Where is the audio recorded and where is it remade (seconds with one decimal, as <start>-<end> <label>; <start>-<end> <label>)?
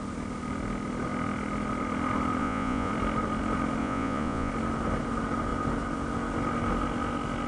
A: 0.0-2.4 recorded; 2.4-2.9 remade; 2.9-3.8 recorded; 3.8-4.5 remade; 4.5-7.5 recorded